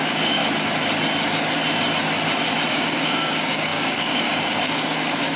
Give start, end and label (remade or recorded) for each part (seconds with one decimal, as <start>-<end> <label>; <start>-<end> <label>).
0.0-0.4 remade; 0.4-2.7 recorded; 2.7-5.4 remade